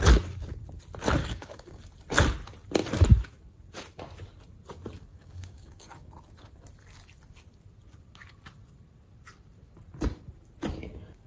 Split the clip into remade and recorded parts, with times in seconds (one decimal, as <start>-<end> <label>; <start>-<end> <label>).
0.0-1.2 recorded; 1.2-1.8 remade; 1.8-5.1 recorded; 5.1-6.1 remade; 6.1-11.3 recorded